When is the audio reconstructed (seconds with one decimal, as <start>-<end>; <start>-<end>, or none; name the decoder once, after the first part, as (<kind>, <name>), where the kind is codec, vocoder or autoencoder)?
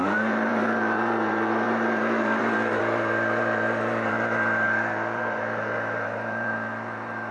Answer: 0.0-7.3 (vocoder, BigVGAN v2)